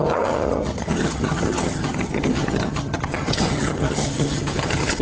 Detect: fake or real fake